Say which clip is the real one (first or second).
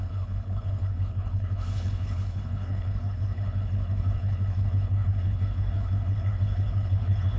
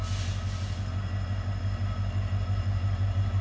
second